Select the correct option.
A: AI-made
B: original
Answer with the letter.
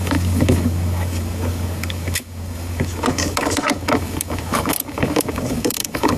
A